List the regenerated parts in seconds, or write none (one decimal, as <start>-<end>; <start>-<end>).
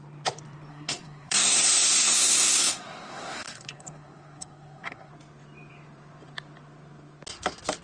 0.7-5.1